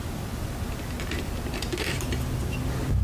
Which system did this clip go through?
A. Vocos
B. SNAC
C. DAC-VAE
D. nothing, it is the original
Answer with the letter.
D